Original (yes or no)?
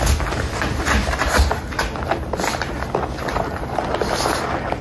yes